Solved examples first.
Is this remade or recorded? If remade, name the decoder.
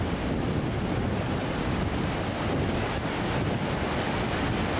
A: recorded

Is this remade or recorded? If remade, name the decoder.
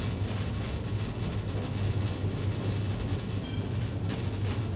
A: recorded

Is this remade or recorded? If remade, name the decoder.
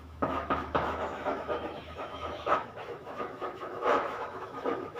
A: remade, autoencoder, DAC-VAE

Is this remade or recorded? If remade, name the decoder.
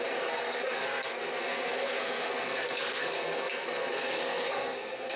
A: remade, codec, SNAC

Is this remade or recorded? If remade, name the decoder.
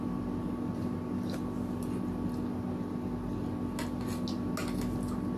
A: recorded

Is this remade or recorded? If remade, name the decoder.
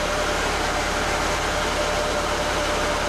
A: recorded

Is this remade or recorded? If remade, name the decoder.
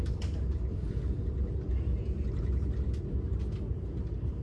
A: recorded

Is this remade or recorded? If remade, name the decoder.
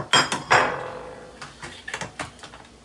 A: recorded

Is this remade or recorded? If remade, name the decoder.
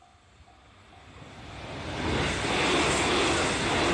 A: recorded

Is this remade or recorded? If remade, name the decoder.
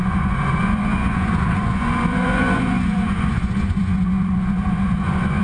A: remade, vocoder, Vocos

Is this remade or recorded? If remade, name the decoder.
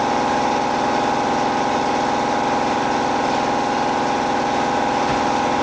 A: recorded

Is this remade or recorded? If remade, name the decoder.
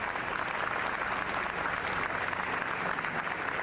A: recorded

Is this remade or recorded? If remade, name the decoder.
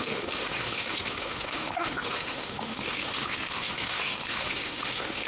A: remade, autoencoder, DAC-VAE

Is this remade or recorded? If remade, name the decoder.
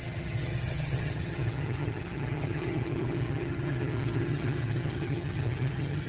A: remade, vocoder, HiFi-GAN